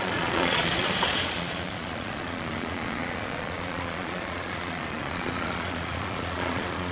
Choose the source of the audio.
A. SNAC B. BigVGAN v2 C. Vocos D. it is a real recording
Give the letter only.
C